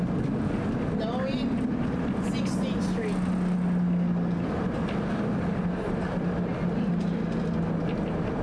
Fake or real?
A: real